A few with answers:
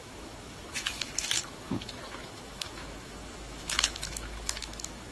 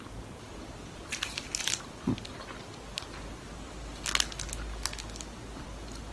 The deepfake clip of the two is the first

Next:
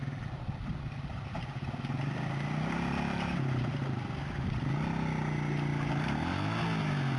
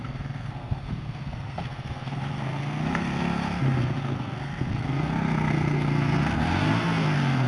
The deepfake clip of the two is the second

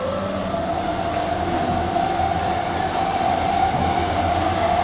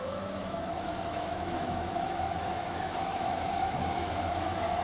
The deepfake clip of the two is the second